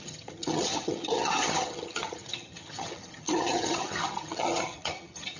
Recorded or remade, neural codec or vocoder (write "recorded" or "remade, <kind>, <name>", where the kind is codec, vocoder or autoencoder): remade, vocoder, HiFi-GAN